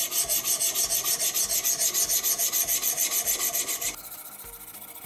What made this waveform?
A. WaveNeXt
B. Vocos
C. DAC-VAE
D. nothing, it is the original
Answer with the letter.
D